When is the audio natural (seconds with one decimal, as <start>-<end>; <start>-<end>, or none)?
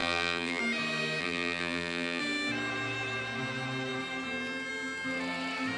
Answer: 0.6-1.2; 2.2-5.8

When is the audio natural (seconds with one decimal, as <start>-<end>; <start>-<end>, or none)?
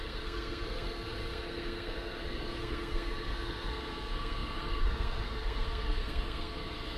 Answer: none